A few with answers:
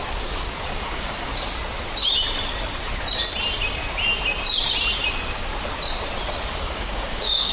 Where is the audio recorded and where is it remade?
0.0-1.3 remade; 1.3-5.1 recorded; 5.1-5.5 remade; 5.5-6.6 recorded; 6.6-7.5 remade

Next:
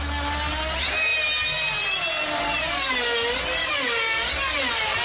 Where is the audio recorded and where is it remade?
0.0-3.6 recorded; 3.6-4.3 remade; 4.3-5.0 recorded

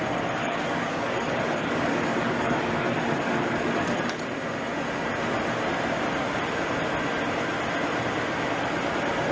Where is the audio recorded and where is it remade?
0.0-0.4 recorded; 0.4-4.0 remade; 4.0-9.3 recorded

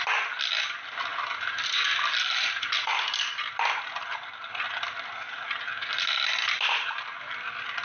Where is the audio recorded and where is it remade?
0.0-7.8 recorded